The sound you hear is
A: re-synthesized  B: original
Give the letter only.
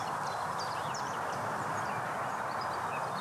B